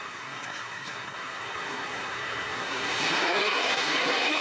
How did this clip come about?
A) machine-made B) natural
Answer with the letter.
A